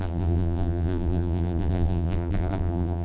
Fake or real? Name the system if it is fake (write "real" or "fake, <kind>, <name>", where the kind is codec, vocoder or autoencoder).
fake, vocoder, BigVGAN v2